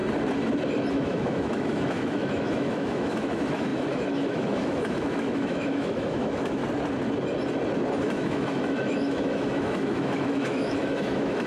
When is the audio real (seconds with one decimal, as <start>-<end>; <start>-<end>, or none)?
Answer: 0.0-0.9; 6.6-8.0